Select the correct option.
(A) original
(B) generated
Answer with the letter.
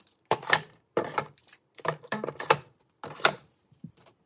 B